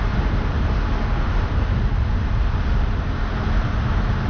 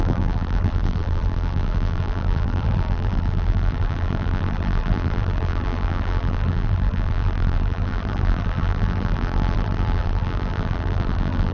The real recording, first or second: first